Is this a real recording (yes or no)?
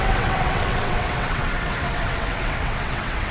no